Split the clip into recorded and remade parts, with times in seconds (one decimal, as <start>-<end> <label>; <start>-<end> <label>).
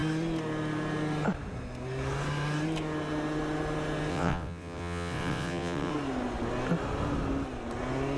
0.0-4.1 recorded; 4.1-5.9 remade; 5.9-8.2 recorded